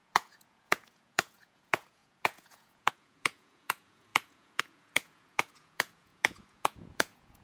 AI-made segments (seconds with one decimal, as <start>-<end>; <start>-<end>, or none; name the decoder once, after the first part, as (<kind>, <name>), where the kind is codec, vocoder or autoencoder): 0.0-7.4 (vocoder, Vocos)

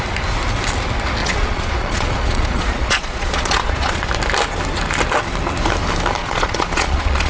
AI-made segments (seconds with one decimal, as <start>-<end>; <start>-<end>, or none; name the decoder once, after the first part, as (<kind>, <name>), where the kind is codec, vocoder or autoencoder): 1.2-4.1 (vocoder, Vocos); 6.2-7.3

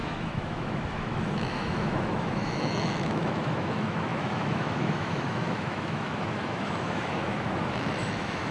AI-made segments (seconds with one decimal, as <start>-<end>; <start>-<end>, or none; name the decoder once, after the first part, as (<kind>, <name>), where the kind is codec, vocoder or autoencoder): 0.0-8.5 (autoencoder, DAC-VAE)

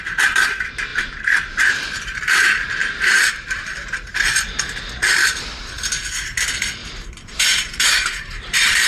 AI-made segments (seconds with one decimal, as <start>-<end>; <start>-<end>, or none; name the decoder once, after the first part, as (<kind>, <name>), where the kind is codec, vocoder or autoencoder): 0.9-1.7 (vocoder, BigVGAN v2); 2.8-3.7; 6.8-8.9

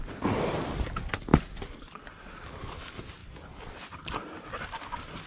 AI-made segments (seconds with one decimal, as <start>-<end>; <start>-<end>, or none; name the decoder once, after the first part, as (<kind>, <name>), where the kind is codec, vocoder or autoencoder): 3.2-4.8 (vocoder, BigVGAN v2)